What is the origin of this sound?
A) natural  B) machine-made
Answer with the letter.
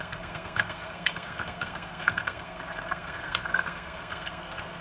B